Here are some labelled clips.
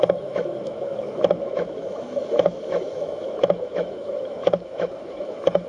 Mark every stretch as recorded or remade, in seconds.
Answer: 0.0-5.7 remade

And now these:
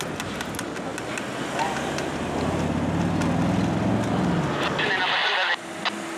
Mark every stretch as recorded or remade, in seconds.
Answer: 0.0-6.2 recorded

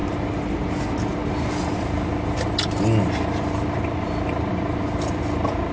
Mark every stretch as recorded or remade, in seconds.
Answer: 0.0-5.7 recorded